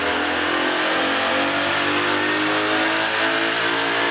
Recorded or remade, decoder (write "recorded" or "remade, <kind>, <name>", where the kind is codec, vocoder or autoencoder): recorded